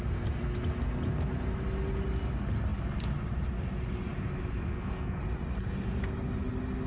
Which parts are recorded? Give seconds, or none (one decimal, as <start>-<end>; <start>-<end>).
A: 0.0-4.6; 5.2-6.9